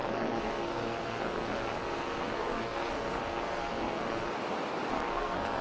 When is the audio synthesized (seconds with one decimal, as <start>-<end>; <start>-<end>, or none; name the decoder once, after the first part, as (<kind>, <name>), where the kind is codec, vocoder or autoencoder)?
0.0-4.3 (codec, SNAC); 4.9-5.6